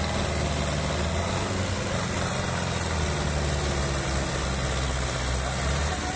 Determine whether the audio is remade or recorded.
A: recorded